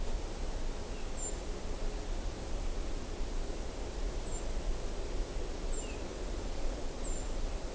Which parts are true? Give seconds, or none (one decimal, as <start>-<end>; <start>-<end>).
0.0-6.1; 6.9-7.7